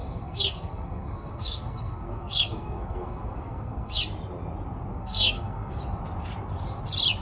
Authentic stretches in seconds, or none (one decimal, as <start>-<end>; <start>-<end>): 4.0-4.9; 5.8-7.2